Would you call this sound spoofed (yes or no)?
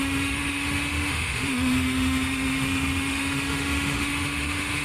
yes